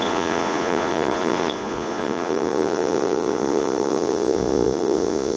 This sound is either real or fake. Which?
fake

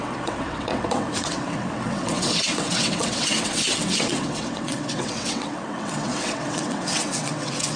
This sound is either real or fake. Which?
fake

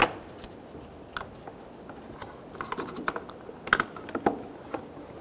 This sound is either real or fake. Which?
real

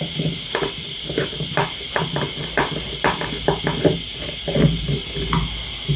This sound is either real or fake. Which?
real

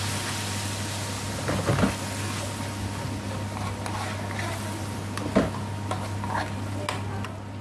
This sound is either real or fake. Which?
real